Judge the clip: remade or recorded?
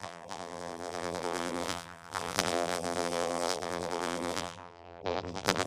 remade